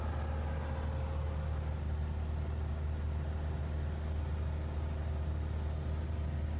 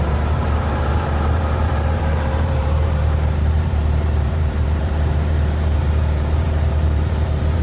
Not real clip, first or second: second